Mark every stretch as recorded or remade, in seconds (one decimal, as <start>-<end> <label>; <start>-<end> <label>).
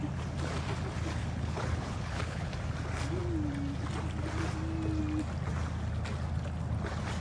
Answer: 0.0-1.2 recorded; 1.2-2.5 remade; 2.5-7.2 recorded